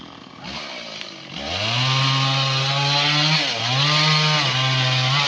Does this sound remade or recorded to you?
recorded